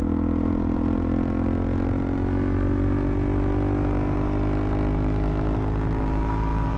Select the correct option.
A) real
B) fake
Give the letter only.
A